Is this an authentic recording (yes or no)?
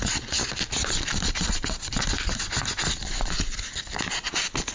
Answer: yes